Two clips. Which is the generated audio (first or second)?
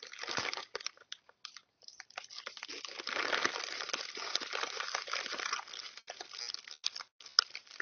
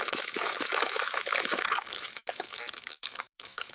second